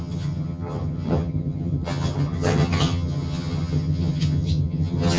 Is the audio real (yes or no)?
no